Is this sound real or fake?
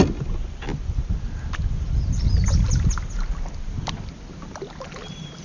real